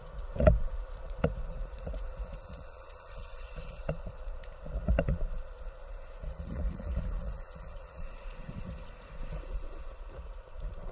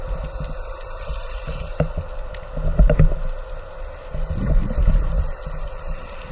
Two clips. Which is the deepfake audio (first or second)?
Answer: first